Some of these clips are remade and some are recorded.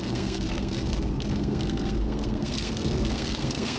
remade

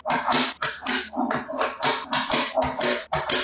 recorded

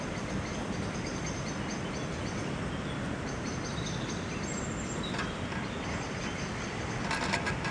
recorded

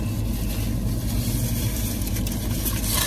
recorded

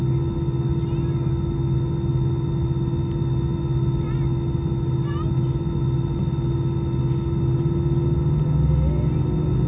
recorded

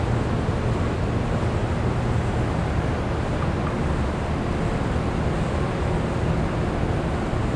recorded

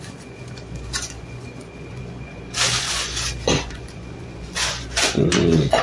remade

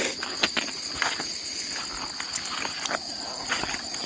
recorded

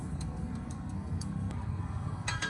remade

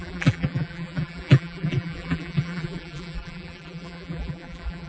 remade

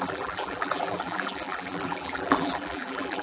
remade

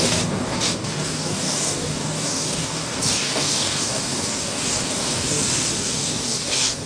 remade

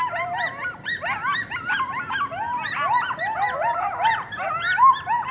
recorded